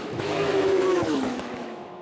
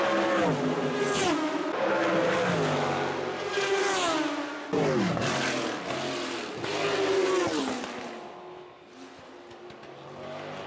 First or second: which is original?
second